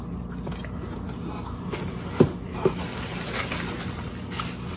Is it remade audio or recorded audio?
recorded